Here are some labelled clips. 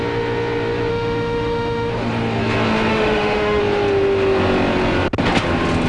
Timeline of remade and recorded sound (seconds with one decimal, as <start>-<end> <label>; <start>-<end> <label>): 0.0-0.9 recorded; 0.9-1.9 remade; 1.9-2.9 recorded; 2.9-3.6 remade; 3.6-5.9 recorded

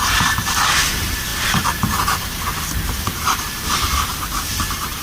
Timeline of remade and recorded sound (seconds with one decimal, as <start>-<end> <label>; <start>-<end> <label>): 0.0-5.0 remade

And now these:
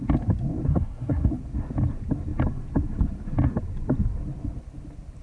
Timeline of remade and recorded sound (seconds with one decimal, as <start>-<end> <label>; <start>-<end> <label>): 0.0-0.7 recorded; 0.7-1.3 remade; 1.3-5.2 recorded

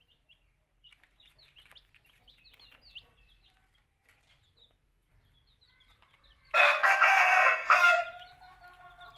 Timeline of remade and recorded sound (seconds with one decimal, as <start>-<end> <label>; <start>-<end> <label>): 0.0-6.6 recorded; 6.6-8.0 remade; 8.0-9.2 recorded

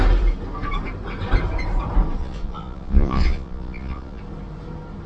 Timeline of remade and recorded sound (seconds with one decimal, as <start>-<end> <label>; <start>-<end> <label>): 0.0-2.2 recorded; 2.2-4.2 remade; 4.2-5.1 recorded

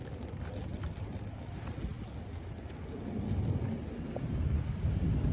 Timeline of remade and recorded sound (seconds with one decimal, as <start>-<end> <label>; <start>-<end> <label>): 0.0-5.3 recorded